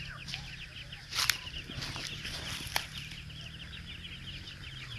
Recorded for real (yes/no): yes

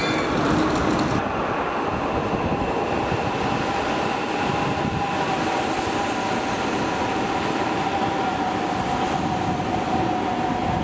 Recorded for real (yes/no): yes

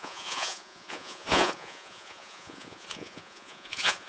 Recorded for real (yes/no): no